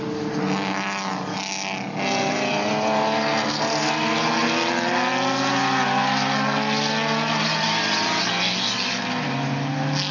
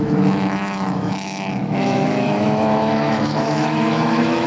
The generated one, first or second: second